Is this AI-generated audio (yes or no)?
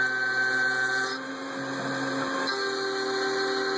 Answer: no